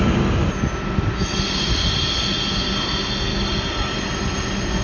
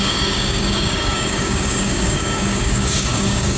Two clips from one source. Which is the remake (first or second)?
second